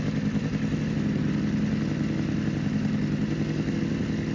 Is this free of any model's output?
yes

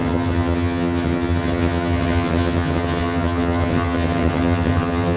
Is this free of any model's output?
no